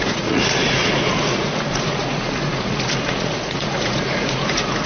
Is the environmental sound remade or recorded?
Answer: remade